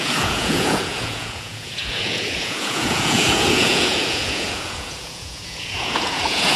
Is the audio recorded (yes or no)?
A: no